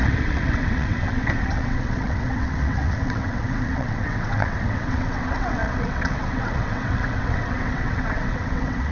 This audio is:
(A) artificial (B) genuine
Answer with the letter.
A